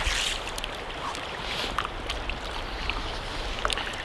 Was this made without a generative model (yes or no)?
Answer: yes